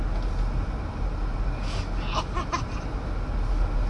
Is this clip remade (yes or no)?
no